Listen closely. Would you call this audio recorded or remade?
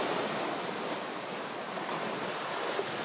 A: recorded